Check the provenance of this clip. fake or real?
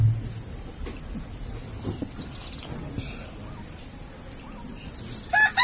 real